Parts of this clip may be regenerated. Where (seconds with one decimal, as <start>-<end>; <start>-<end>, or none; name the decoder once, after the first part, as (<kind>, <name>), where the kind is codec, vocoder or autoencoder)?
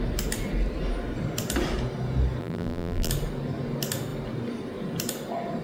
2.4-3.1 (vocoder, BigVGAN v2)